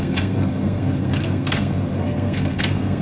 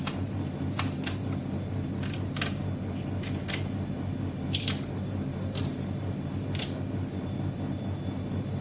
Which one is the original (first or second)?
second